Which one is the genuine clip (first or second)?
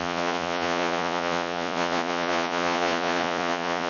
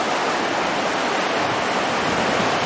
second